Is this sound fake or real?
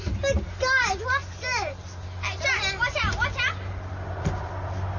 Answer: real